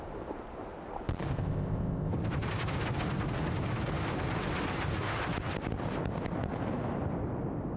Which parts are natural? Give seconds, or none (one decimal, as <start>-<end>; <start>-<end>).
0.0-1.3; 2.1-7.8